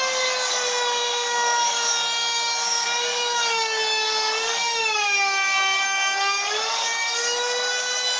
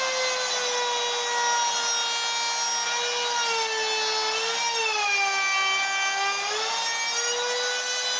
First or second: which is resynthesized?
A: first